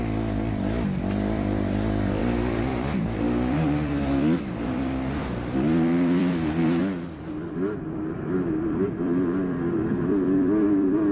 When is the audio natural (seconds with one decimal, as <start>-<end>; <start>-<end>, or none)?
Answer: 6.8-7.8